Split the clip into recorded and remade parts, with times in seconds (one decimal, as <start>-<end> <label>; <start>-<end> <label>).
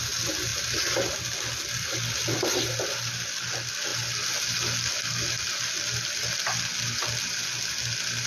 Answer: 0.0-8.3 recorded